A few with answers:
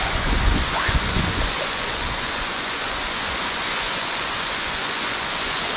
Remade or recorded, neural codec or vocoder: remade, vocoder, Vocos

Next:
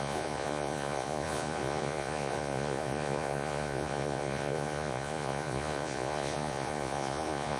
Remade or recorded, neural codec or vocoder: remade, vocoder, Vocos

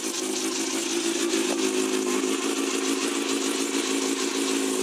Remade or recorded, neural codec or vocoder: recorded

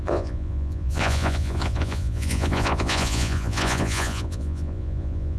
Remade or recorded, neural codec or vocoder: remade, vocoder, Vocos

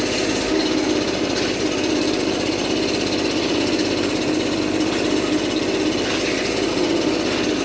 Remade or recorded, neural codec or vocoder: recorded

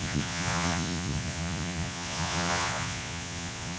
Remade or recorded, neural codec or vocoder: remade, vocoder, Vocos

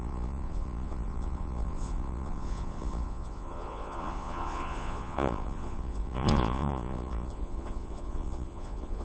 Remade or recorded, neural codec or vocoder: remade, vocoder, Vocos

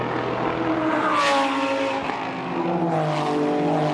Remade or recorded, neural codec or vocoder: recorded